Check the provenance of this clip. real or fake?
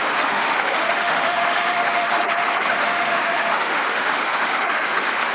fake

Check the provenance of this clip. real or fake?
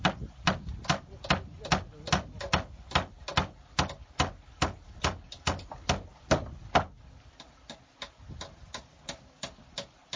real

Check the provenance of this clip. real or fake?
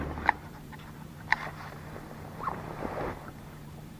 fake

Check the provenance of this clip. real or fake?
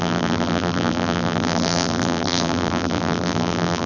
fake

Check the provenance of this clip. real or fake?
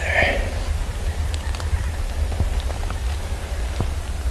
real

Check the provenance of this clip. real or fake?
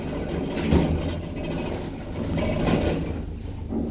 real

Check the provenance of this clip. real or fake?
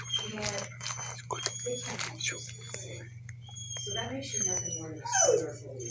real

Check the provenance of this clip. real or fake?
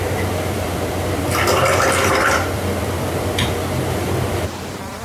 fake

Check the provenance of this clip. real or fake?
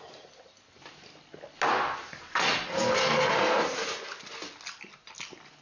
real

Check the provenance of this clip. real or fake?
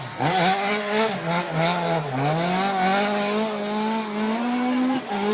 real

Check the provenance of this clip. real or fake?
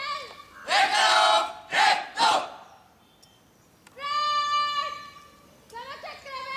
real